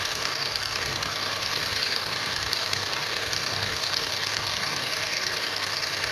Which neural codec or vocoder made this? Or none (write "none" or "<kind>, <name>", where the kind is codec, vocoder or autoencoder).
codec, DAC